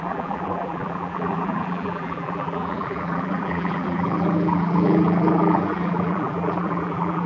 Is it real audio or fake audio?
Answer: fake